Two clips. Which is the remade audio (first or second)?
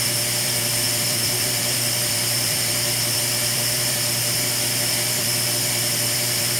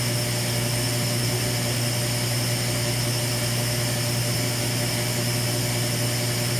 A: first